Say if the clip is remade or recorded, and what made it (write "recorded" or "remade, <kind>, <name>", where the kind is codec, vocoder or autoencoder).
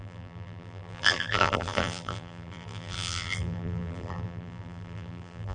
remade, vocoder, BigVGAN v2